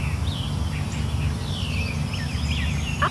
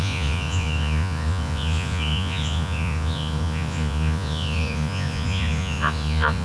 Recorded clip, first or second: first